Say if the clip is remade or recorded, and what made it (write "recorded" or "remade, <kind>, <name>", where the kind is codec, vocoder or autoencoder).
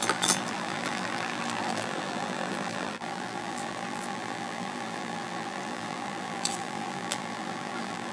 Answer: remade, vocoder, BigVGAN v2